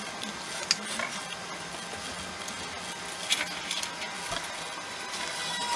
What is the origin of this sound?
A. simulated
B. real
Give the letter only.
B